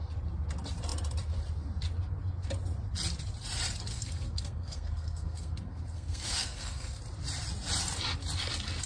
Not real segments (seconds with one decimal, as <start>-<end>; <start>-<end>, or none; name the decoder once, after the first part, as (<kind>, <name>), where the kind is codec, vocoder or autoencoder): 3.9-7.0 (codec, SNAC)

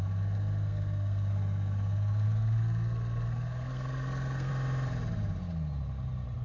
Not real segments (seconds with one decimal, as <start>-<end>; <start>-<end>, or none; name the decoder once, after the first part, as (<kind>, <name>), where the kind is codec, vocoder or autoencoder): 0.0-4.5 (codec, SNAC)